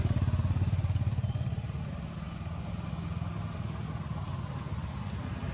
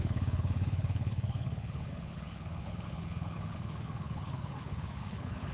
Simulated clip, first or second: second